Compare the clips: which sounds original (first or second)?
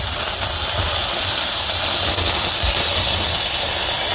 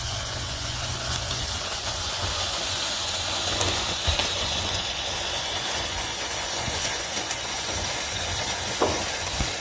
first